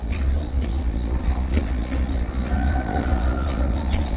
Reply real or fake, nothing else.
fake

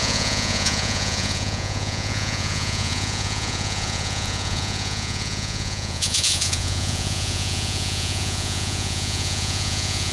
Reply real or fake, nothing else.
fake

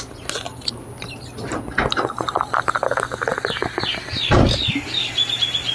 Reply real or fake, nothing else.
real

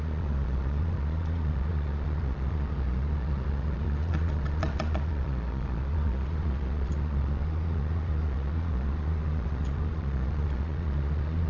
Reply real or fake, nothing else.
fake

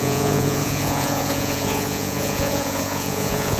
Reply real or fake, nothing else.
fake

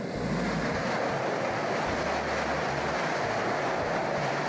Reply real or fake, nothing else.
real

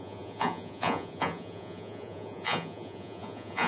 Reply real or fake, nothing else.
fake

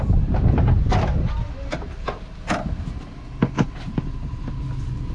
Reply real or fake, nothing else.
real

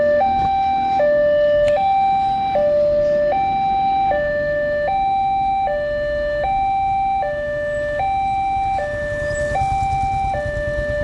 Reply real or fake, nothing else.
real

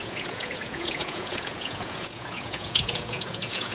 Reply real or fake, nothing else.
fake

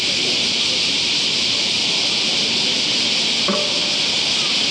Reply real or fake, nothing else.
real